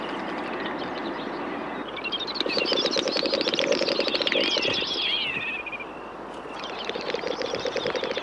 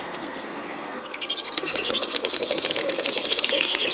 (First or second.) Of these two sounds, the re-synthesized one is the second